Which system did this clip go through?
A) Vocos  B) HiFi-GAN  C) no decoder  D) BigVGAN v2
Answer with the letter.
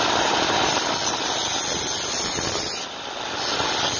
C